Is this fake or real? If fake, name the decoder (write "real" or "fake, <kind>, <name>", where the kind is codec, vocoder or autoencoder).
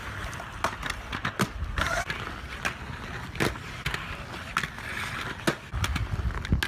real